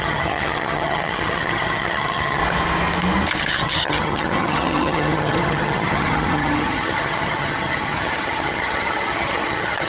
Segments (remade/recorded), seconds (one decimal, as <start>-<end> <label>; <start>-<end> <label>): 0.0-2.4 remade; 2.4-3.4 recorded; 3.4-9.9 remade